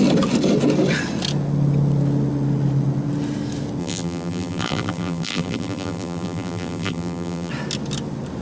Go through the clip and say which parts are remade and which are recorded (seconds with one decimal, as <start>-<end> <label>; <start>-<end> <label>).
0.0-3.8 recorded; 3.8-7.5 remade; 7.5-8.4 recorded